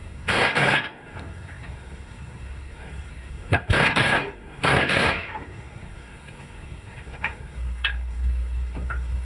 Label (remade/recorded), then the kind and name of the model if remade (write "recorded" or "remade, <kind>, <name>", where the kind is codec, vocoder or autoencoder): remade, codec, SNAC